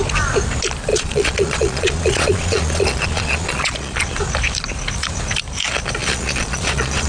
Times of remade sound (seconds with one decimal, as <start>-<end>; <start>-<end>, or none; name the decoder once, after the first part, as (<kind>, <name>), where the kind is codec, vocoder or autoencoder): 0.9-4.0 (vocoder, Vocos); 6.0-7.1